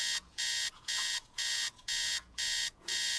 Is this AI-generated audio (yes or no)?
yes